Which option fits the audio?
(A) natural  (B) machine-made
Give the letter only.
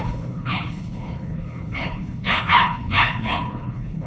B